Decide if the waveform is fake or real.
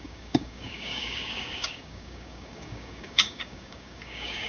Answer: fake